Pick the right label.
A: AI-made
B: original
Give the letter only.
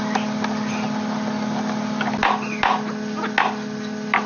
B